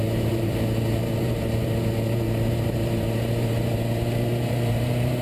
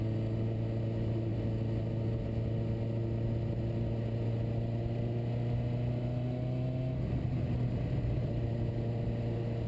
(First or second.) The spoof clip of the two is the first